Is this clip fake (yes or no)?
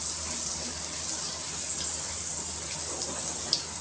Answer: no